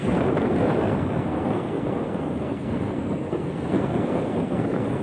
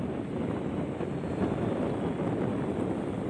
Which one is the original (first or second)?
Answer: second